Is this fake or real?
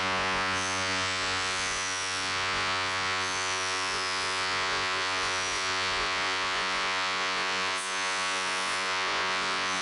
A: fake